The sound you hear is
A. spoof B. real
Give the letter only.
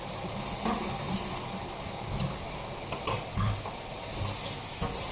A